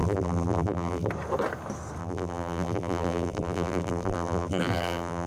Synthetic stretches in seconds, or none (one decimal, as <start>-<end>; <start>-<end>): 0.0-1.1; 2.0-5.3